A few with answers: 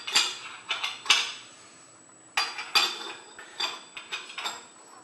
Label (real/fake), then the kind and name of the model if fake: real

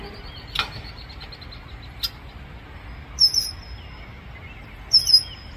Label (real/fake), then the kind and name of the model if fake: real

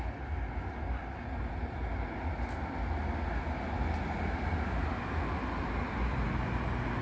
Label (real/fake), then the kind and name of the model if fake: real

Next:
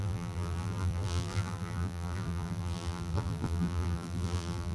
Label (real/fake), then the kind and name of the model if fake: fake, vocoder, BigVGAN v2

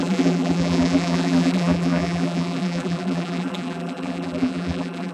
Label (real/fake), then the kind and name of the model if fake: fake, vocoder, BigVGAN v2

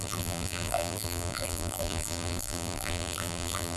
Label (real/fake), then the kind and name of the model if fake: fake, vocoder, BigVGAN v2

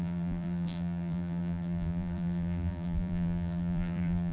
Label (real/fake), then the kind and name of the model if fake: fake, vocoder, BigVGAN v2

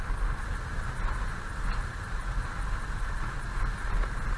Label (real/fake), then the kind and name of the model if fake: real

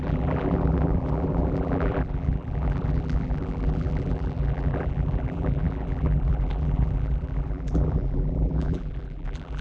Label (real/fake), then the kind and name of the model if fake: fake, vocoder, BigVGAN v2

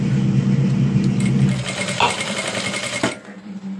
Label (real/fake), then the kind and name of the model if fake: real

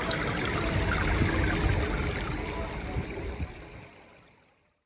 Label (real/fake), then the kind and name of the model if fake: real